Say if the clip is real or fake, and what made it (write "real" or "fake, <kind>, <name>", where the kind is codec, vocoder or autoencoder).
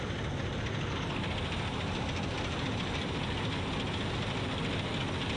real